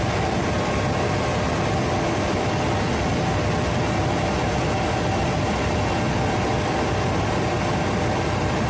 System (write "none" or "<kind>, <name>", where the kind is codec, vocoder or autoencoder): none